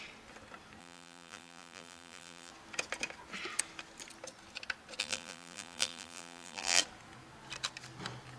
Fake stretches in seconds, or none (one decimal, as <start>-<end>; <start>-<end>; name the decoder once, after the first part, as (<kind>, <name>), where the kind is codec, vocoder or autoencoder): 0.8-2.5 (vocoder, BigVGAN v2); 5.0-6.8